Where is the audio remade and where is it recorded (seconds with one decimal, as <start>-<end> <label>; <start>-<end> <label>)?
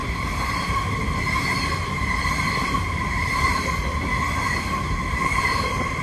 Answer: 0.0-3.6 remade; 3.6-5.1 recorded; 5.1-6.0 remade